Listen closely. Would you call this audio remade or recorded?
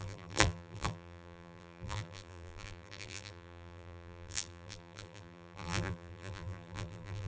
remade